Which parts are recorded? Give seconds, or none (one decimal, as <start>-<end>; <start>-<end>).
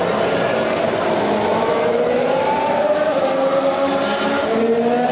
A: 0.0-1.5; 4.6-5.1